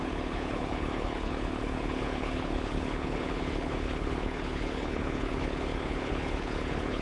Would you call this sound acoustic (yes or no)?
no